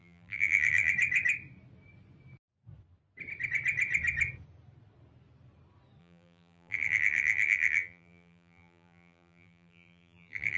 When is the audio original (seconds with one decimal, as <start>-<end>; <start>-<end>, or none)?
0.9-6.0